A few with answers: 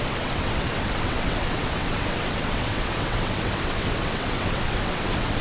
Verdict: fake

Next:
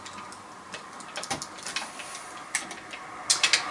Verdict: real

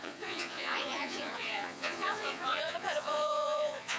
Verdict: fake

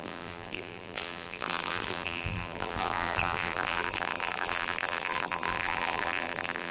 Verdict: fake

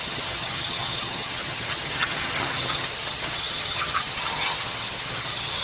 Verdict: fake